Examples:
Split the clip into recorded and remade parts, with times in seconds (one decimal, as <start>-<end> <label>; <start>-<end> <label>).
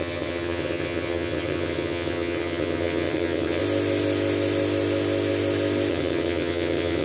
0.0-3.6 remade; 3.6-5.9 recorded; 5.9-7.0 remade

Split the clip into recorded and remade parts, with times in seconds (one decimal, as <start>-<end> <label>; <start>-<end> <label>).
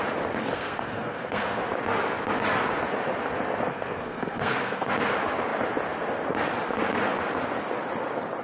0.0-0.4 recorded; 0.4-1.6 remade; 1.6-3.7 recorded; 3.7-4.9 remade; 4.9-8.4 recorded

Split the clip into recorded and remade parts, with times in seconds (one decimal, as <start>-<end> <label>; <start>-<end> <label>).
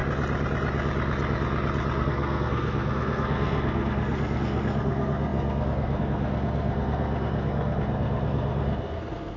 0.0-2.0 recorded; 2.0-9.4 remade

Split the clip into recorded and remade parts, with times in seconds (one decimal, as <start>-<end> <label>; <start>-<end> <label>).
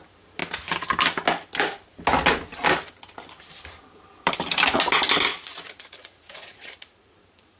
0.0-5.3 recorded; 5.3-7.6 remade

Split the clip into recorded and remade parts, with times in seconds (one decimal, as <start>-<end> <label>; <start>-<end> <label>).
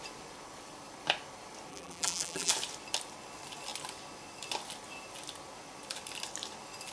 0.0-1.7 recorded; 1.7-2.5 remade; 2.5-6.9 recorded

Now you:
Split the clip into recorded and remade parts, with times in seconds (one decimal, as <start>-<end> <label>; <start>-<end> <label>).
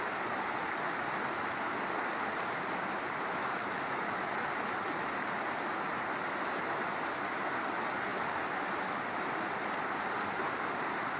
0.0-11.2 recorded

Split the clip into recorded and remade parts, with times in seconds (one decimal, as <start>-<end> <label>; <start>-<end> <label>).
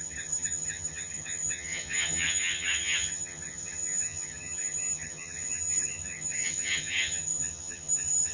0.0-8.3 remade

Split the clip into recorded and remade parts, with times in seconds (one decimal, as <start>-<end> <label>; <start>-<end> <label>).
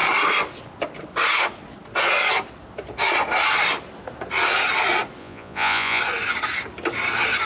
0.0-5.2 recorded; 5.2-6.0 remade; 6.0-7.5 recorded